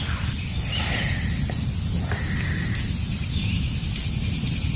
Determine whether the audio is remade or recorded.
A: recorded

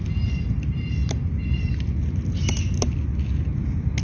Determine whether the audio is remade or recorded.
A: recorded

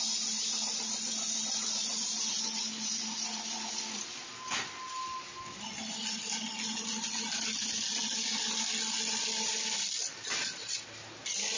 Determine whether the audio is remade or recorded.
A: recorded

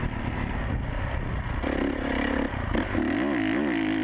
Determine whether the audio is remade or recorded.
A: recorded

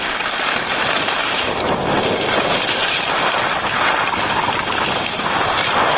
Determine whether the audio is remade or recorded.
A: recorded